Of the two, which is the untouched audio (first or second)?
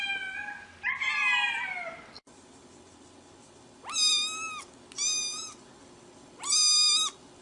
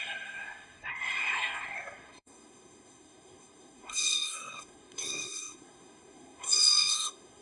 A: first